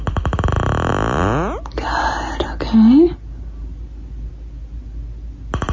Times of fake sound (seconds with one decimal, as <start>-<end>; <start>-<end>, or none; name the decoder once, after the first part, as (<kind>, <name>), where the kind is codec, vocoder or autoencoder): none